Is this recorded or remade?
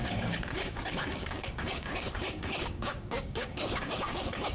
remade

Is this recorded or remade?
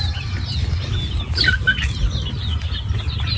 recorded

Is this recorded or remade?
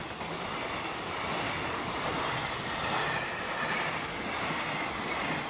recorded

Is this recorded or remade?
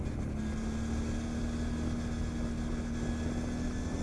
recorded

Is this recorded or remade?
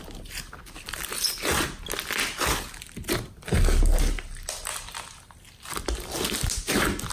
recorded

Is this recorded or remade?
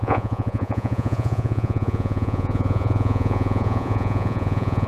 remade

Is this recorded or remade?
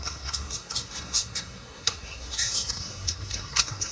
remade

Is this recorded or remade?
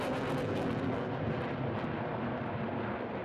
recorded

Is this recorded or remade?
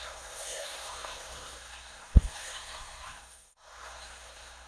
remade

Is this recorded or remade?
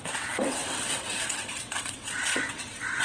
remade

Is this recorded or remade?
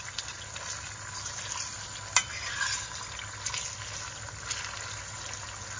recorded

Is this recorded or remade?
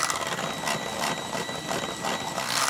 recorded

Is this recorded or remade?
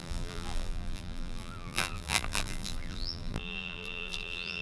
remade